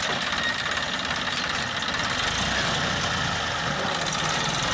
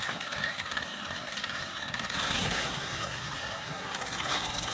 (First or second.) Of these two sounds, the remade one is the second